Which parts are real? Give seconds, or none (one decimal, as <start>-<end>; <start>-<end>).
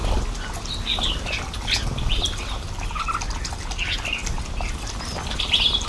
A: 0.0-5.9